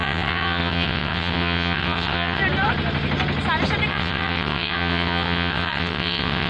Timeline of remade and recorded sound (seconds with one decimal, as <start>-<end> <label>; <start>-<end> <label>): 0.0-2.4 remade; 2.4-3.9 recorded; 3.9-6.5 remade